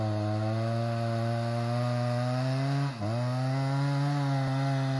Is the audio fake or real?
real